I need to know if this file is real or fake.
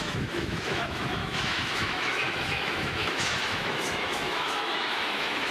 fake